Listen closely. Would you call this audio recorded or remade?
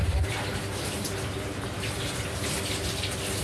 recorded